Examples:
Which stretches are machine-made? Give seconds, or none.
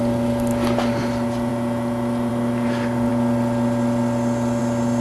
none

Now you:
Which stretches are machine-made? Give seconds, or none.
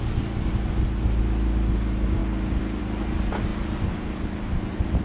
none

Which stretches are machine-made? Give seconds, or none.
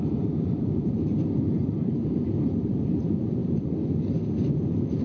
0.0-5.0 (vocoder, BigVGAN v2)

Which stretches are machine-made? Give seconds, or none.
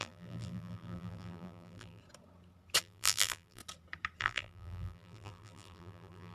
0.0-2.0 (vocoder, BigVGAN v2); 2.8-3.6; 4.2-6.3